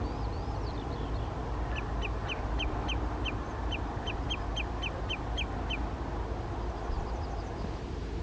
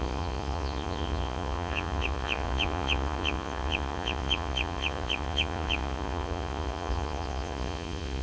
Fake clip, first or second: second